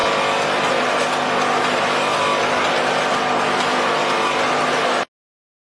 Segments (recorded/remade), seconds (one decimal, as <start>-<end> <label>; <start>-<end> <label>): 0.0-5.6 recorded